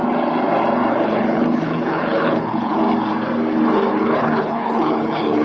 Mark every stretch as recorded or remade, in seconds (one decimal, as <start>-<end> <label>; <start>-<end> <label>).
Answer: 0.0-0.9 recorded; 0.9-2.8 remade; 2.8-3.9 recorded; 3.9-5.4 remade